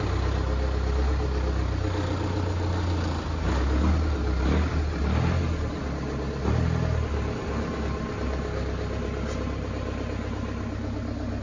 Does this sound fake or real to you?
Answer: real